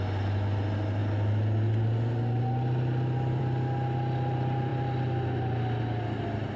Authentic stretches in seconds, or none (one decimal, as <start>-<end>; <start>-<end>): 0.0-6.6

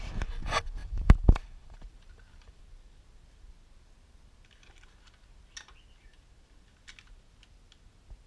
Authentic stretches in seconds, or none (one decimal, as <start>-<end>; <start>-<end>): 0.0-0.8; 2.6-8.3

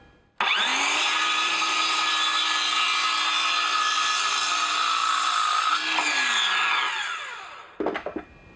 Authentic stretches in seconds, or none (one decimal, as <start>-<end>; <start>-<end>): 0.0-0.7; 2.1-5.0; 5.7-8.6

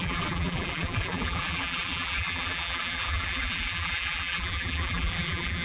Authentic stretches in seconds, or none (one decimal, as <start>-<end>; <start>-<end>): none

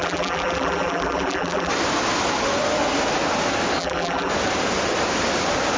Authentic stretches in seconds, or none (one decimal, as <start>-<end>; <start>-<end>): 1.7-3.8; 4.3-5.8

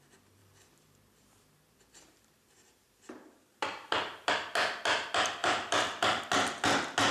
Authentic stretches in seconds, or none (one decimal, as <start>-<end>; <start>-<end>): 0.0-0.4; 4.3-5.4; 6.2-7.1

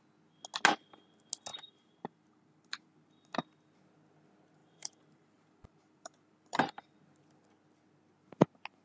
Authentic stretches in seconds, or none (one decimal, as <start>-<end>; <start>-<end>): 0.0-1.5; 2.9-4.6; 7.0-8.8